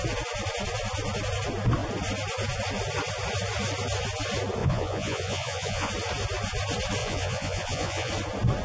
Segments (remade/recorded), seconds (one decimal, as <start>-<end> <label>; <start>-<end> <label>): 0.0-4.6 recorded; 4.6-5.9 remade; 5.9-7.0 recorded; 7.0-8.1 remade; 8.1-8.6 recorded